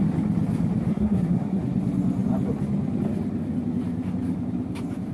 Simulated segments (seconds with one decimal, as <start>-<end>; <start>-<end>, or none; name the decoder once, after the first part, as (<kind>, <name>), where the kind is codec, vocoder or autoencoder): 0.9-1.6 (codec, SNAC)